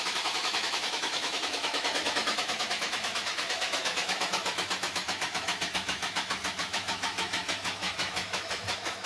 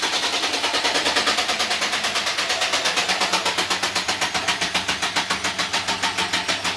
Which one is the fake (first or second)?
first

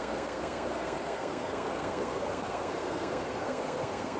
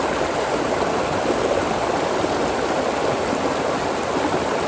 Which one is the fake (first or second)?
first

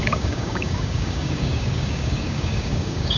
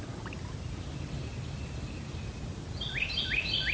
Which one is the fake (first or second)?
first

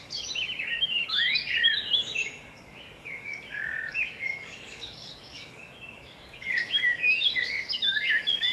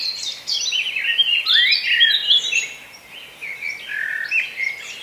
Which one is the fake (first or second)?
first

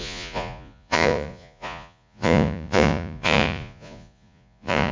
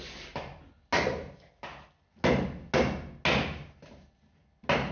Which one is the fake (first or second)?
first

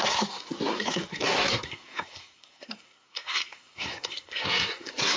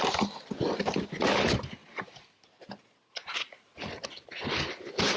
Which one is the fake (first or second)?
first